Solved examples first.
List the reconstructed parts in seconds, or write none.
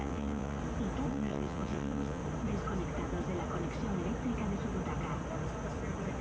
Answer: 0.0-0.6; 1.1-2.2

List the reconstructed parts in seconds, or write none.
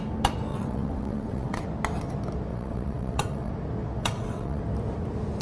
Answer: 0.5-1.6; 2.5-3.5; 4.0-4.6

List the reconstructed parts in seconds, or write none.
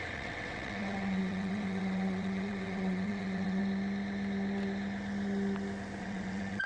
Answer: 0.0-3.6; 6.0-6.7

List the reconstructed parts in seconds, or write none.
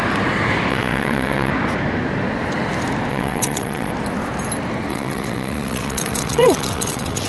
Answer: 0.7-1.5; 3.1-3.9; 4.9-7.3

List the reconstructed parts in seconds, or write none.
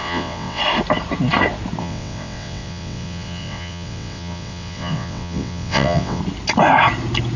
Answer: 0.0-0.6; 1.8-6.2